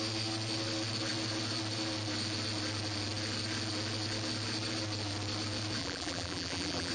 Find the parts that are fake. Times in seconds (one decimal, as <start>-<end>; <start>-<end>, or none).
5.8-6.9